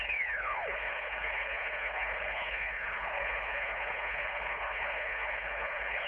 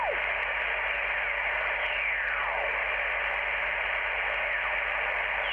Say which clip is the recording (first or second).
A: second